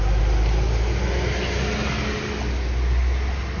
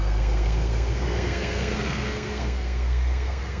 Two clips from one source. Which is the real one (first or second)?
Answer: first